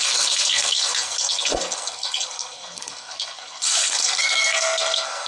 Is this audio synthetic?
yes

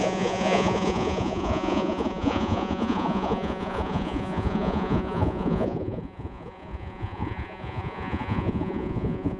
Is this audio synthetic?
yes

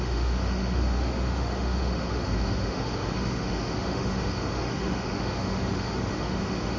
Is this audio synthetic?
yes